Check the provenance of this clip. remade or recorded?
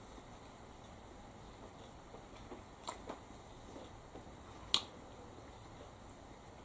recorded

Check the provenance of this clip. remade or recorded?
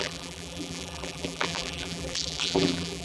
remade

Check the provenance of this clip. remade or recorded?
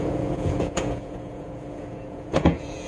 remade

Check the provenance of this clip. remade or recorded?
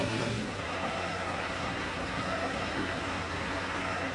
remade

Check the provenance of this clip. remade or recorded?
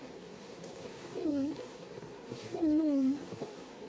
remade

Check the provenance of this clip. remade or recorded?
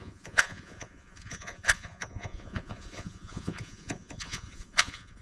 remade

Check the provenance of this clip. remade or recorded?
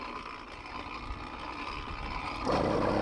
recorded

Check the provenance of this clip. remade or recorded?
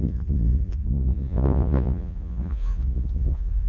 remade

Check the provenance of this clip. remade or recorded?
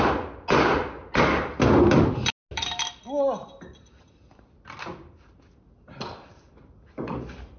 recorded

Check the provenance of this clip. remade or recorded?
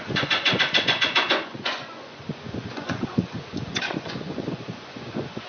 remade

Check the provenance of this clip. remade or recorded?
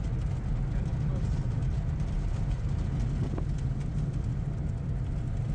recorded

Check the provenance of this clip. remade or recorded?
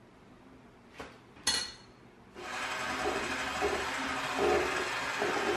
recorded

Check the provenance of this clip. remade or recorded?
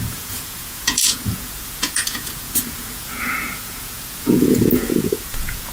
remade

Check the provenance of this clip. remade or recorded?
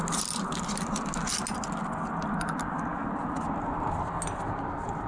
recorded